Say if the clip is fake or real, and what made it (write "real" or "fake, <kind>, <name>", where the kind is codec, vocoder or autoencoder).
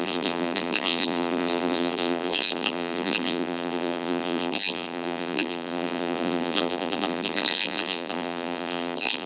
fake, vocoder, BigVGAN v2